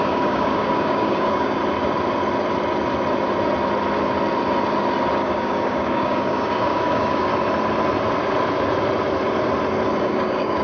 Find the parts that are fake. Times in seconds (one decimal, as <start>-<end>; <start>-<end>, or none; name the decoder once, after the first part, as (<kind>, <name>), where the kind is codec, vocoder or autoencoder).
0.0-1.6 (codec, DAC); 5.2-7.3; 10.0-10.6